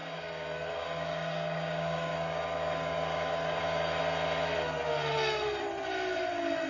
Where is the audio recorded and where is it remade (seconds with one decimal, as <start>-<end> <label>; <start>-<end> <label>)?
0.0-4.0 remade; 4.0-6.7 recorded